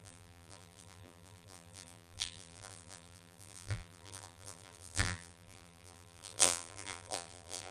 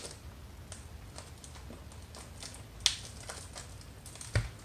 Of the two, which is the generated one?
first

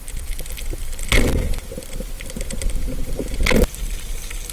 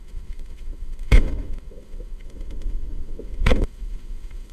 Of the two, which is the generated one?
second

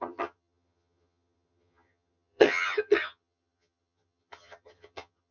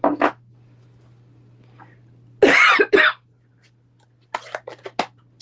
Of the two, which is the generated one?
first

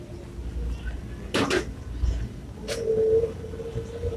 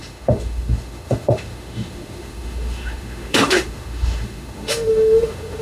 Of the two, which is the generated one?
second